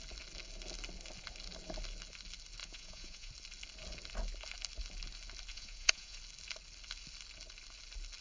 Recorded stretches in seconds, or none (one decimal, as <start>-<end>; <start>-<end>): 0.0-2.6; 3.3-5.5; 6.2-8.2